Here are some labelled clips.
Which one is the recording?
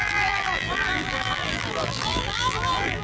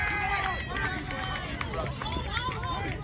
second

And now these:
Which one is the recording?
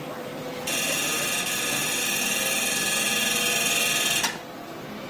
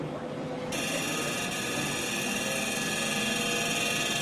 second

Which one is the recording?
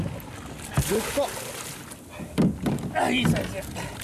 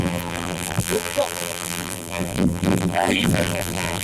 first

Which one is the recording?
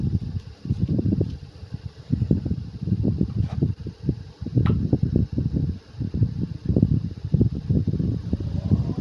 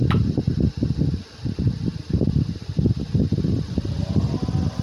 second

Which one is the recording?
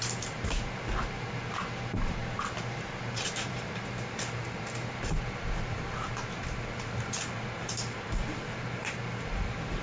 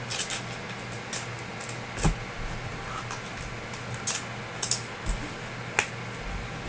second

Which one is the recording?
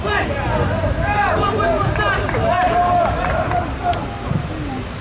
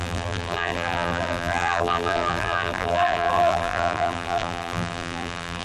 first